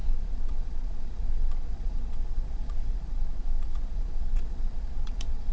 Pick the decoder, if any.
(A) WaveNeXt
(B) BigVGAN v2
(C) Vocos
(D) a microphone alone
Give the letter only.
C